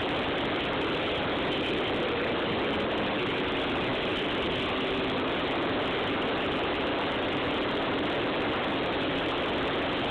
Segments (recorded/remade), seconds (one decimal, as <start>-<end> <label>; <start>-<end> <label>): 0.0-10.1 recorded